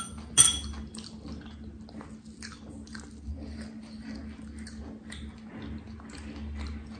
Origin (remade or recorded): recorded